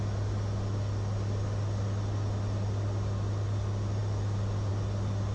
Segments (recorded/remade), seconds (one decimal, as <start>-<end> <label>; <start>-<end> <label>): 0.0-5.3 recorded